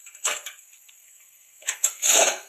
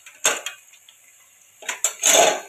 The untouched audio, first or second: second